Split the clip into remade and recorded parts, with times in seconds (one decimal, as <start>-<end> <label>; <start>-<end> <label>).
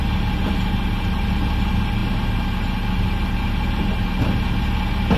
0.0-5.2 recorded